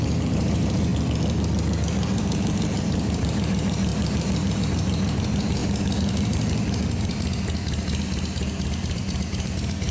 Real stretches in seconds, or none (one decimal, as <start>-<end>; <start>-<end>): 0.9-2.2; 5.6-7.8

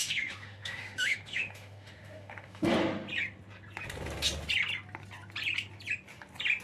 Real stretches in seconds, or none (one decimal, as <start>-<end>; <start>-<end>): 2.7-6.6

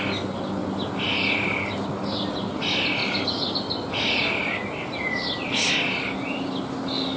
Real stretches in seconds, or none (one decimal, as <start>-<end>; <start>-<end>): 0.0-7.2